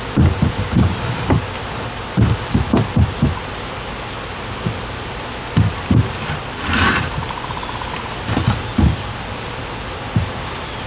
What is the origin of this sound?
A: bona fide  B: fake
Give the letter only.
A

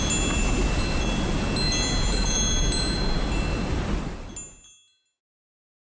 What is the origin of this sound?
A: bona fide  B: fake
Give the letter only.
A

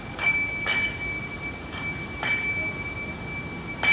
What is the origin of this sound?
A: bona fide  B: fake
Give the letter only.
A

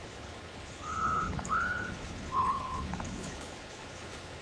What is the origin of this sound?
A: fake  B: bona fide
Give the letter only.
A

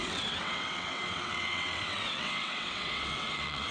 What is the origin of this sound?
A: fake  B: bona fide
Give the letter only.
A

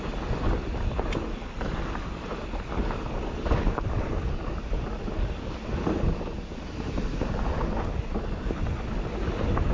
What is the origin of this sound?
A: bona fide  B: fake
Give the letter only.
A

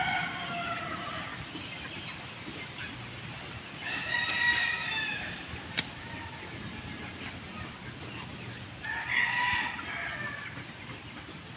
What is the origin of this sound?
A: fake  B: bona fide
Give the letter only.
B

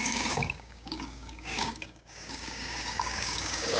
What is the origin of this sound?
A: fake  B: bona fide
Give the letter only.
A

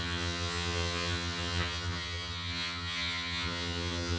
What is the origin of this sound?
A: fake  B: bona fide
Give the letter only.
A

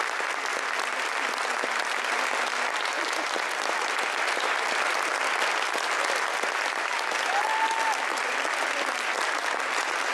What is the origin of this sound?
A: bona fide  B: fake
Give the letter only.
A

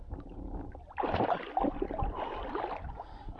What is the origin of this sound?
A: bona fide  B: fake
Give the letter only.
A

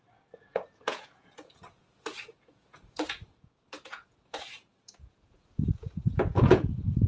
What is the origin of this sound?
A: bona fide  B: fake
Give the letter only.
B